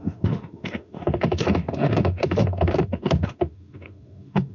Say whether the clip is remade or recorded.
remade